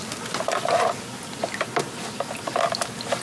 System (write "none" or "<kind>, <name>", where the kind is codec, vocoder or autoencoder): none